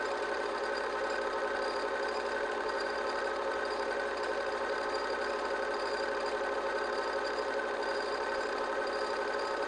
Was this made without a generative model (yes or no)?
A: no